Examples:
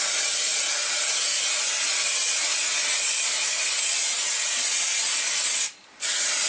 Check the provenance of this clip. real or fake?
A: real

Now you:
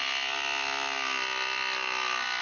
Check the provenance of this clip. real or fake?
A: real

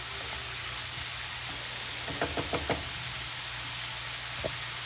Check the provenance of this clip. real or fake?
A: real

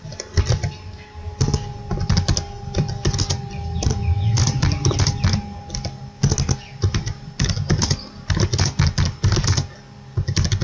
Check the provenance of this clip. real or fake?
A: real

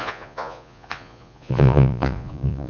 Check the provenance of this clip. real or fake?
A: fake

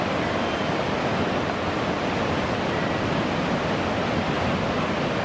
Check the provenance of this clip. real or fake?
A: real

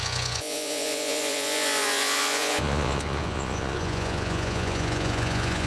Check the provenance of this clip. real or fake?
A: fake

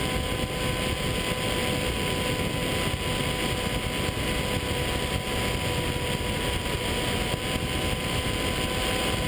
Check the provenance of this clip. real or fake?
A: real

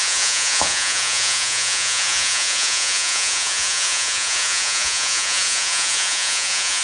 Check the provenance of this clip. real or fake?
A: fake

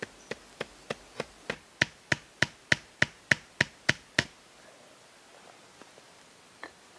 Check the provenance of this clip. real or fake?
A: real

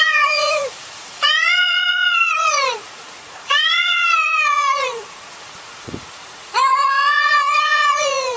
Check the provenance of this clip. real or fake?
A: fake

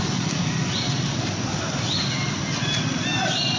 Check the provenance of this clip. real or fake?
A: real